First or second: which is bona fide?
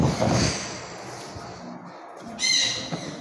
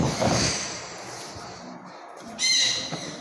first